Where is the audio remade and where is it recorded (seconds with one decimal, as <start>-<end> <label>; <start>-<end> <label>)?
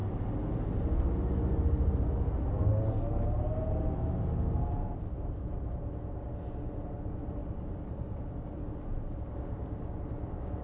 0.0-10.6 recorded